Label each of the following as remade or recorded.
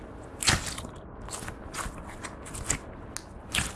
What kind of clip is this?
recorded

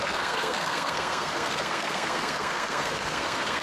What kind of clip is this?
remade